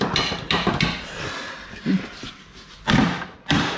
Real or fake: real